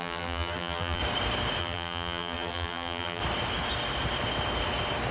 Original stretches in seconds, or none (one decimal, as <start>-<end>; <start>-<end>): 1.0-1.6; 3.2-5.1